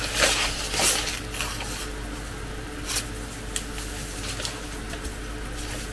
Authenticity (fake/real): real